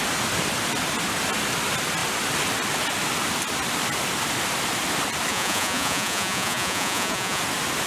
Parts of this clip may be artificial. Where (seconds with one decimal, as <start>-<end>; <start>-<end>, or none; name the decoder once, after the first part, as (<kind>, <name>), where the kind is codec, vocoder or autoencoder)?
5.3-7.4 (vocoder, Vocos)